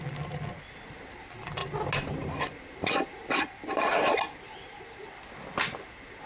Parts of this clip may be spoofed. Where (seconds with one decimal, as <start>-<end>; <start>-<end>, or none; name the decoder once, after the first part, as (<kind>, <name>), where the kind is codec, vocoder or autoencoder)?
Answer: none